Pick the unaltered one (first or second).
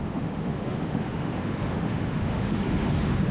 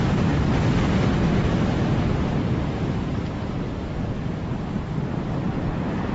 second